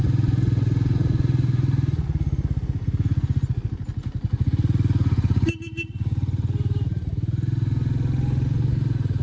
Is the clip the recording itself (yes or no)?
yes